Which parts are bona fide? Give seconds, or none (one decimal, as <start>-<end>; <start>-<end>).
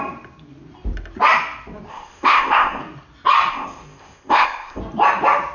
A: 0.0-1.9; 2.8-3.5; 4.8-5.5